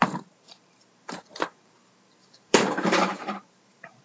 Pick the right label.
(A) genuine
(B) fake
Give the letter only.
B